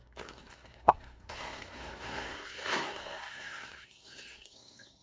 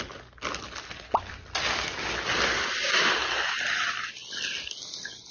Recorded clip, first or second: second